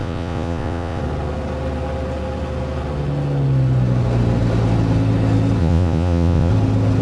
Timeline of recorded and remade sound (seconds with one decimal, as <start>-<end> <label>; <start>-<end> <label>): 0.0-1.0 remade; 1.0-5.6 recorded; 5.6-6.5 remade; 6.5-7.0 recorded